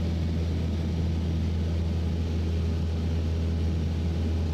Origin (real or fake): real